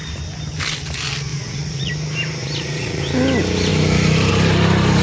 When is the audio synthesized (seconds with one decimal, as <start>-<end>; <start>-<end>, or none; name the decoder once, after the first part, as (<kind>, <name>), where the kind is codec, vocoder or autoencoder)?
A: 1.3-1.9 (vocoder, Vocos); 2.4-3.0